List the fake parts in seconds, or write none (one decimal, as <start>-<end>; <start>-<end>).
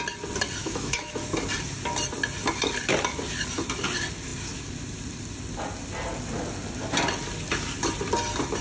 0.6-1.2